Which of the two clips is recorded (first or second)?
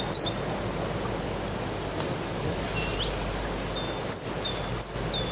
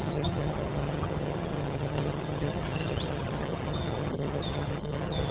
first